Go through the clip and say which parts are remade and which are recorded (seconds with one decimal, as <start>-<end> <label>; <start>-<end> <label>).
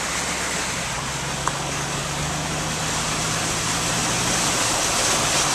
0.0-1.4 recorded; 1.4-2.3 remade; 2.3-5.5 recorded